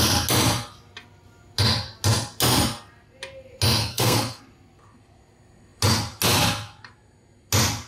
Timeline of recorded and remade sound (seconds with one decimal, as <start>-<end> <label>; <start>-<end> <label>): 0.0-3.8 recorded; 3.8-4.4 remade; 4.4-7.9 recorded